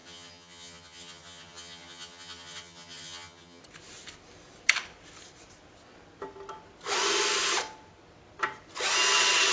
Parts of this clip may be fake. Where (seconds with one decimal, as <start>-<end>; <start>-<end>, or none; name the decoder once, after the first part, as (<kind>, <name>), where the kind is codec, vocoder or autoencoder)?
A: 0.0-3.6 (vocoder, HiFi-GAN)